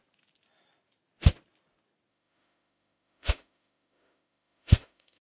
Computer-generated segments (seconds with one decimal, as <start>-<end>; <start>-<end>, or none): 2.1-5.3